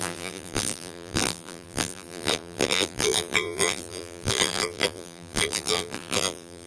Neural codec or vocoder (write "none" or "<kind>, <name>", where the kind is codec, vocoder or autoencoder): vocoder, BigVGAN v2